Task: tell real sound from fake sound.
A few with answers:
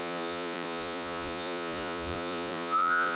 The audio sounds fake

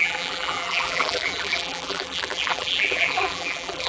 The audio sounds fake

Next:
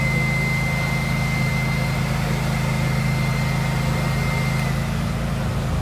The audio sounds real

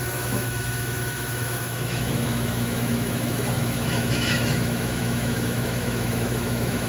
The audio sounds fake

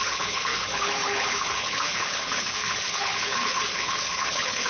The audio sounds fake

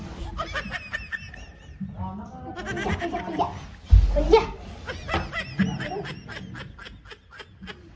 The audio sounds real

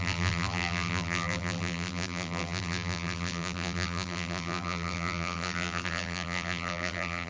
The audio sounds fake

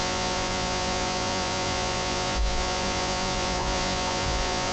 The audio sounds fake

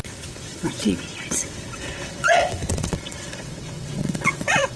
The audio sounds fake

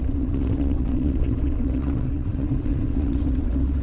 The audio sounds fake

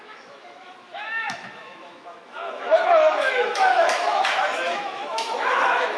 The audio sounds fake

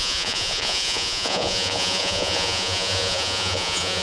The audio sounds fake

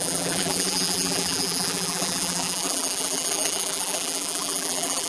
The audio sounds fake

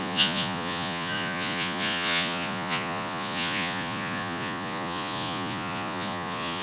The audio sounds fake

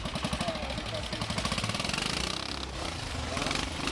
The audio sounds real